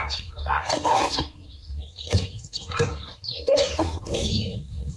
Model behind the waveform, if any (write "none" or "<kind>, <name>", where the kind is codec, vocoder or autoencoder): codec, SNAC